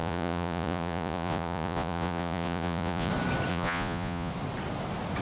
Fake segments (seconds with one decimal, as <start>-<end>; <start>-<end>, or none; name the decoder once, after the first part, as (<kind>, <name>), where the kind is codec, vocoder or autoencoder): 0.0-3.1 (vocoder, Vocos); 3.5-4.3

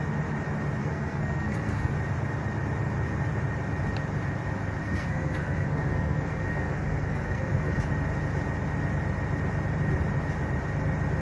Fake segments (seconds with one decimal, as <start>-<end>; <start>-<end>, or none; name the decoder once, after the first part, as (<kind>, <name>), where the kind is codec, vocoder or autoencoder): 0.8-1.9 (codec, SNAC); 4.8-7.9

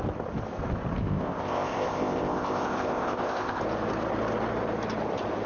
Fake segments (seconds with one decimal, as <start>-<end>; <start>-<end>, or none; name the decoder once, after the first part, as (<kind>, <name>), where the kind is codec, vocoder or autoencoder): 1.0-3.6 (codec, ZipCodec)

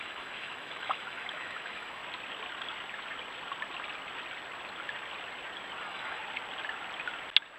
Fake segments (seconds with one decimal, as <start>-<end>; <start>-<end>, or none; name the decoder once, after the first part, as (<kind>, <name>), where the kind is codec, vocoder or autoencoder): 0.0-2.0 (autoencoder, DAC-VAE); 5.8-6.2

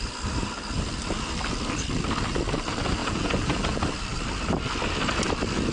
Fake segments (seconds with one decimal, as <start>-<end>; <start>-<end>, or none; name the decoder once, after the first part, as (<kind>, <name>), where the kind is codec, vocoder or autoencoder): 3.0-3.8 (vocoder, Vocos)

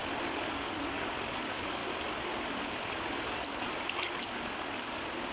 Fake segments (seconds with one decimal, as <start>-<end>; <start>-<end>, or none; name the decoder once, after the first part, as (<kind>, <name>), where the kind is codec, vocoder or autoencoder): 0.5-1.8 (codec, DAC)

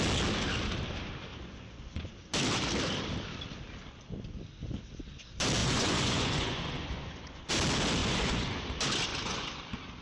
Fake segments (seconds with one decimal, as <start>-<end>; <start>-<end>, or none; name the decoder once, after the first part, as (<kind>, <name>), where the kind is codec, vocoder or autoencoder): 1.3-2.1 (vocoder, Vocos); 5.6-7.5; 8.0-8.6; 9.1-9.6